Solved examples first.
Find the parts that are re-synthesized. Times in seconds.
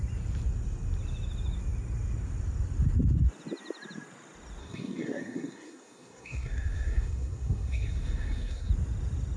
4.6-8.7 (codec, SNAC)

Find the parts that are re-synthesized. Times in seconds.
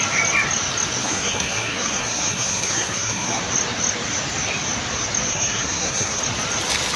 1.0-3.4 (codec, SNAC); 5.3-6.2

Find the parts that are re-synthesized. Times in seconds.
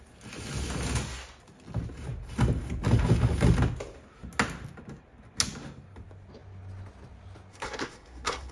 7.5-8.5 (codec, SNAC)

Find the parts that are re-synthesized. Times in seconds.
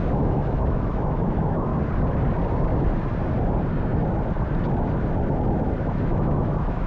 0.0-1.7 (autoencoder, DAC-VAE); 5.8-6.9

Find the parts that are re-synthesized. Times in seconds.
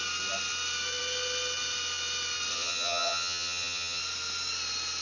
2.5-4.0 (vocoder, HiFi-GAN)